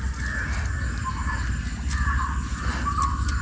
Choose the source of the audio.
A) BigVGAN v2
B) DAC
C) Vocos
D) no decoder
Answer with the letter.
D